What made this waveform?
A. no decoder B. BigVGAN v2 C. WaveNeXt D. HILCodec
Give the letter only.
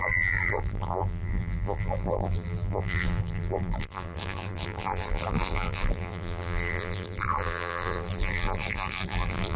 B